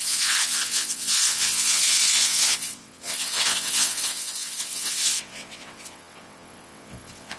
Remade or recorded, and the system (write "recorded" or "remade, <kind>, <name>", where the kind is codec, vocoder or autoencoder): remade, vocoder, WaveNeXt